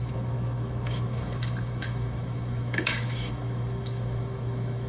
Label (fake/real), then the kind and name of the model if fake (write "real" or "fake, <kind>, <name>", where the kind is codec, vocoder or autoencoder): fake, autoencoder, DAC-VAE